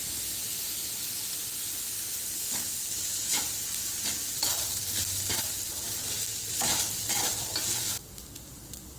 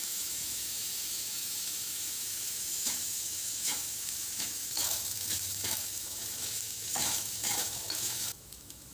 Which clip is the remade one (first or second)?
second